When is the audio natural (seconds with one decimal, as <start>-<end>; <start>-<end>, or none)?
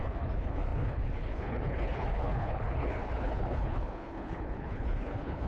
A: none